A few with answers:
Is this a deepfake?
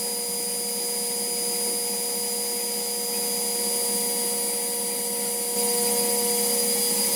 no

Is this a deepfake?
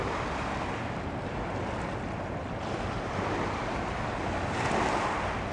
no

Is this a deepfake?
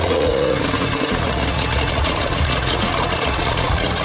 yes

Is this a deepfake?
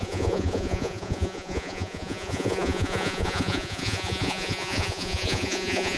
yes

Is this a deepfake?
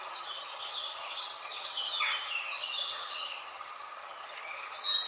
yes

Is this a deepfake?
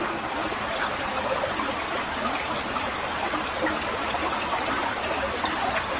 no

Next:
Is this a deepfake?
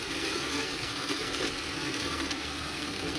yes